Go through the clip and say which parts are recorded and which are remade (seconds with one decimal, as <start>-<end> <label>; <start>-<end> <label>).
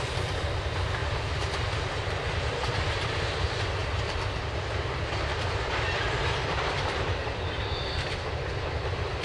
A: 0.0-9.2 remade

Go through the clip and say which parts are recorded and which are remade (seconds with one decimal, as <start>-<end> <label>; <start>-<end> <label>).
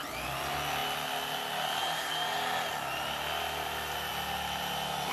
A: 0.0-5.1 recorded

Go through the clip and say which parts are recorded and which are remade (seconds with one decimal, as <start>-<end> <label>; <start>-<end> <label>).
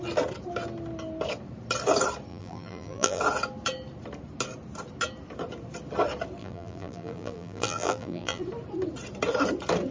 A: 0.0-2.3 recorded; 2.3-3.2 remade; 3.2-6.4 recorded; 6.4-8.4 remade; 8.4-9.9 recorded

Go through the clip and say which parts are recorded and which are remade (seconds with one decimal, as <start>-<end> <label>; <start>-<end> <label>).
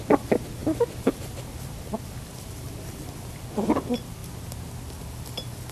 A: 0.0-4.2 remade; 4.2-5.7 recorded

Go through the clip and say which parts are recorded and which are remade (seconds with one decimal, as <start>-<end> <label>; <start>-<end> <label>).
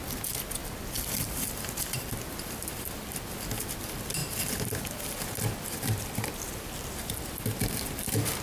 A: 0.0-0.6 recorded; 0.6-2.9 remade; 2.9-4.2 recorded; 4.2-7.4 remade; 7.4-8.4 recorded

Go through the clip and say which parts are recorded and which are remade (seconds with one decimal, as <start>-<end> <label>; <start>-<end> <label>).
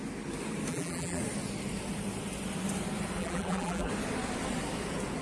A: 0.0-0.7 recorded; 0.7-1.2 remade; 1.2-3.2 recorded; 3.2-3.9 remade; 3.9-5.2 recorded